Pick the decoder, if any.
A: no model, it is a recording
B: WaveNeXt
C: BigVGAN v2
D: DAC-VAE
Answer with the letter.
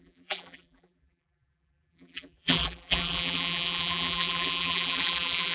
C